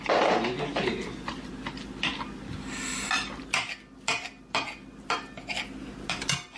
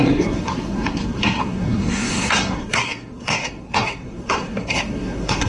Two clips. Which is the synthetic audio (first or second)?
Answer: second